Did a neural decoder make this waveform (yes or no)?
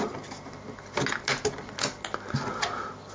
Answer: no